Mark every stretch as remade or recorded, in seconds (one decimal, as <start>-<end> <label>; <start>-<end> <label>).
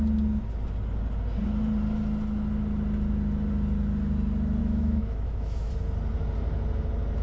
0.0-4.6 recorded; 4.6-5.7 remade; 5.7-7.2 recorded